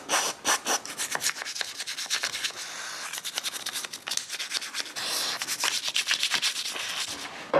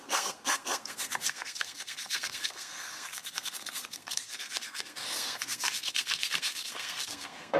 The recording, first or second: first